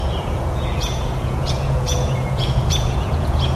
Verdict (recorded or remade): remade